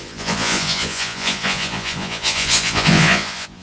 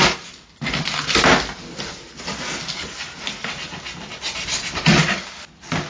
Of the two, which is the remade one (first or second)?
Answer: first